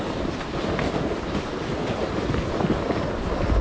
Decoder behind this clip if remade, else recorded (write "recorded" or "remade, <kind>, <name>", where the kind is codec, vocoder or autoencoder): recorded